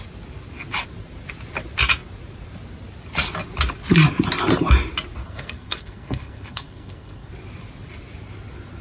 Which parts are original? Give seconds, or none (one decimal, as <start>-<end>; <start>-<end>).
0.0-5.2; 7.3-8.8